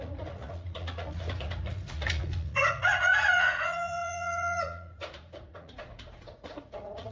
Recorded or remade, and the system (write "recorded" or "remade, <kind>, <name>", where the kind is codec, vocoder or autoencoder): remade, vocoder, Vocos